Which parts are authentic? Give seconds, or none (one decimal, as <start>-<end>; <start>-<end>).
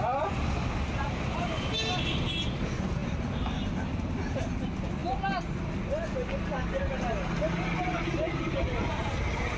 0.0-9.6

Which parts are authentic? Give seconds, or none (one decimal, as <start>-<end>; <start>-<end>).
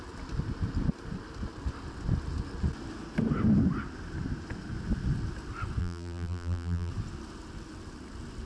0.0-5.8; 6.9-8.5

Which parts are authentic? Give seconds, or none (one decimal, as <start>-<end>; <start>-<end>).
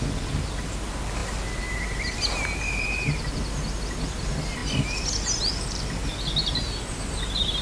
0.0-7.6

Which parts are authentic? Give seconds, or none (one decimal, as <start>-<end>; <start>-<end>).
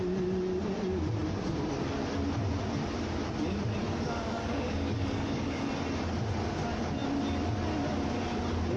0.0-3.8; 5.6-8.8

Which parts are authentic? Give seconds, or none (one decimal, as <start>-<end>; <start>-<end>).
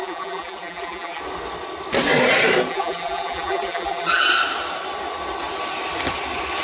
1.2-2.7; 4.2-6.6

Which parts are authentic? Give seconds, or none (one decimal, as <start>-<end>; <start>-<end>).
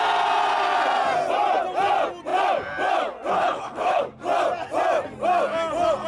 0.0-3.3; 4.0-6.1